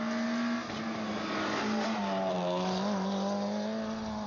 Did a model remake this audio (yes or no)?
no